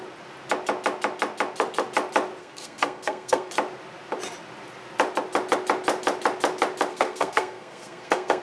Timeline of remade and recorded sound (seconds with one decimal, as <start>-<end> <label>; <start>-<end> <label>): 0.0-2.4 recorded; 2.4-3.5 remade; 3.5-6.9 recorded; 6.9-8.4 remade